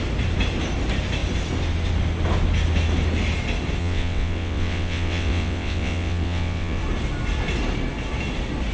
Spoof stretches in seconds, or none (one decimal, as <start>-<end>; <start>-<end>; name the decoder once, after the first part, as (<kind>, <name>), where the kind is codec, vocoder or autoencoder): 3.8-6.8 (vocoder, WaveNeXt)